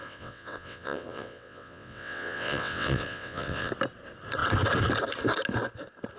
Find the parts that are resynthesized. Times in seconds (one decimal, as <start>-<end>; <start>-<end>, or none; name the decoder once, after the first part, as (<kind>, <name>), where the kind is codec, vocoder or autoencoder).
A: 0.0-3.7 (vocoder, WaveNeXt)